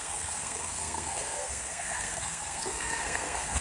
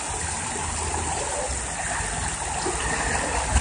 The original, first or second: second